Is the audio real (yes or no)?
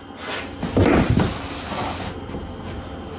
yes